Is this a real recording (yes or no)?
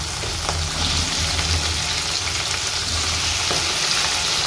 yes